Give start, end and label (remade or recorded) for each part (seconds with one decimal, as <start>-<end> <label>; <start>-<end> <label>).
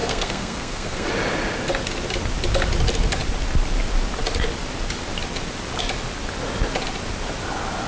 0.0-1.1 remade; 1.1-7.9 recorded